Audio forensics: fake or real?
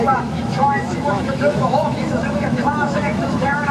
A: fake